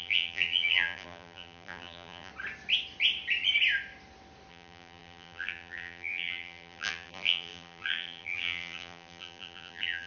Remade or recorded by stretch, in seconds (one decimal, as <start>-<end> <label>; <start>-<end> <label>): 0.0-2.3 remade; 2.3-4.5 recorded; 4.5-10.1 remade